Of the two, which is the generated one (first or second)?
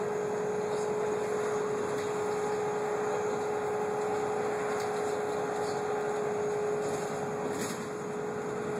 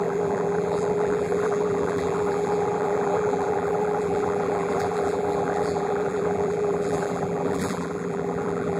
second